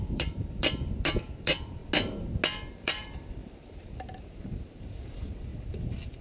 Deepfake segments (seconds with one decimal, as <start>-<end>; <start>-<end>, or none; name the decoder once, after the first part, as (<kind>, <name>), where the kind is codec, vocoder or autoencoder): 0.0-1.8 (vocoder, BigVGAN v2); 2.7-5.5